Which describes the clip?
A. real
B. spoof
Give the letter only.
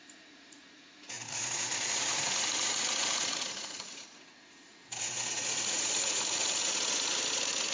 B